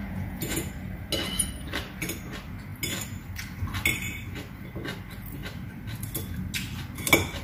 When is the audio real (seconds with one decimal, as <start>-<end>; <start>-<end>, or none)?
0.7-7.4